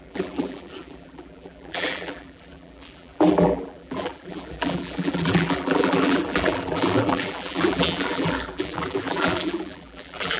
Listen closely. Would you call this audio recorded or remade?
remade